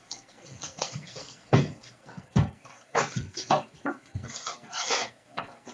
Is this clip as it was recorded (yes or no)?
no